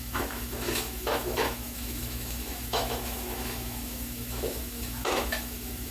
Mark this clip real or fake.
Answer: fake